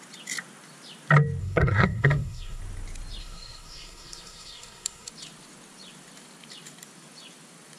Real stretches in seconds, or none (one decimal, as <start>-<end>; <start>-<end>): 0.0-1.4; 2.6-3.2; 5.1-7.8